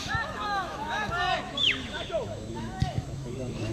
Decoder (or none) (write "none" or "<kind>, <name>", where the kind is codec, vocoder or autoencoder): autoencoder, DAC-VAE